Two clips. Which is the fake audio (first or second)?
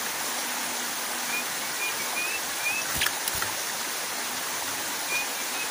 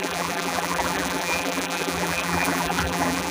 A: second